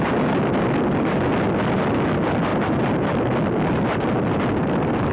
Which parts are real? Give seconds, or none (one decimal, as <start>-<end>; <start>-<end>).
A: 0.0-5.1